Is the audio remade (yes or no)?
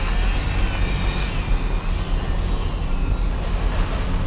no